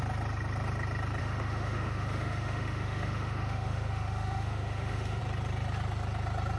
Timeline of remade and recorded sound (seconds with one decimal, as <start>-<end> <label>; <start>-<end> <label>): 0.0-1.2 recorded; 1.2-5.2 remade; 5.2-6.6 recorded